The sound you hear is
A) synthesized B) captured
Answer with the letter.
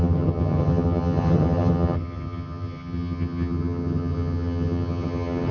A